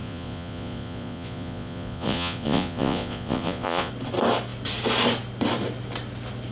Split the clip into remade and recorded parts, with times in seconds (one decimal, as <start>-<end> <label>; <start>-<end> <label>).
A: 0.0-3.9 remade; 3.9-6.5 recorded